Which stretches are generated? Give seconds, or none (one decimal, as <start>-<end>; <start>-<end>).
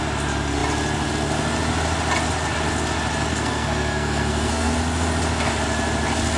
3.3-4.7